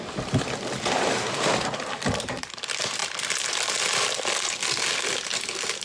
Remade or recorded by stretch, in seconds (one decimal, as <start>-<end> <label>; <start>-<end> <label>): 0.0-5.8 recorded